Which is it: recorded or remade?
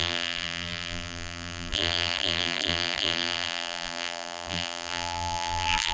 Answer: remade